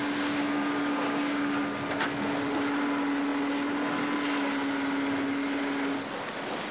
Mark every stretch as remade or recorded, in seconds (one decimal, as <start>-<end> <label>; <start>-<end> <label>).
0.0-0.4 recorded; 0.4-1.6 remade; 1.6-6.7 recorded